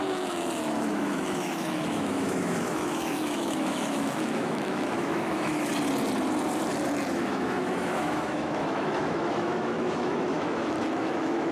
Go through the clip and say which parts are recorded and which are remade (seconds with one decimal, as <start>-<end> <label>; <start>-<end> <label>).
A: 0.0-5.7 remade; 5.7-7.1 recorded; 7.1-11.5 remade